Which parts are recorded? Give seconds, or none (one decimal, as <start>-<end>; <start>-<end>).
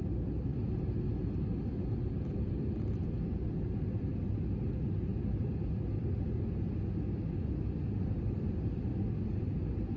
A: 0.0-10.0